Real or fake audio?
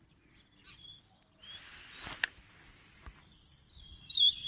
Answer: real